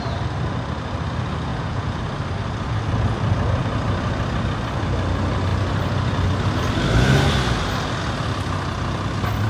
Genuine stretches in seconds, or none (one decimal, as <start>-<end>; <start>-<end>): 0.0-1.5; 2.0-9.5